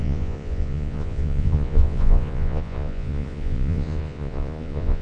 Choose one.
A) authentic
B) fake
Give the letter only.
B